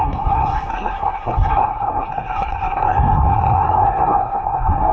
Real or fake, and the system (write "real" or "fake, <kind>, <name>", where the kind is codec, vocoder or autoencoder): fake, codec, SNAC